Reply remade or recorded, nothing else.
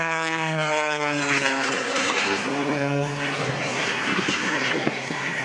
remade